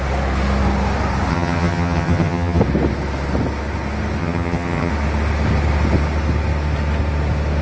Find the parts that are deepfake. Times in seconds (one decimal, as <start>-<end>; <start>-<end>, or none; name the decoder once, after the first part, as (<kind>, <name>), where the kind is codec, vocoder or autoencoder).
1.3-2.6 (vocoder, HiFi-GAN); 4.2-4.9